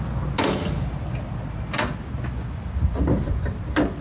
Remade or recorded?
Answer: recorded